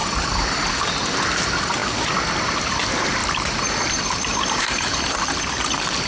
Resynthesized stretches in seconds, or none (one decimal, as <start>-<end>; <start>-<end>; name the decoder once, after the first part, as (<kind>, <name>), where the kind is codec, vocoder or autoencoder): 3.2-5.0 (vocoder, BigVGAN v2)